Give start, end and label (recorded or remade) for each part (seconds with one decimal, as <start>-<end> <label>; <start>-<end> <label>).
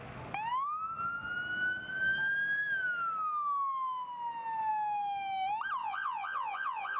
0.0-5.8 recorded; 5.8-7.0 remade